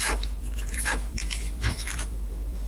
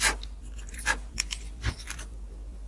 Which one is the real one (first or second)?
second